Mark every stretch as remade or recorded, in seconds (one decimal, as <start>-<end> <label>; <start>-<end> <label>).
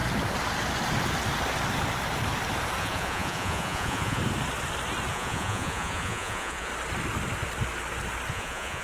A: 0.0-2.8 recorded; 2.8-4.2 remade; 4.2-5.1 recorded; 5.1-6.7 remade; 6.7-8.3 recorded; 8.3-8.8 remade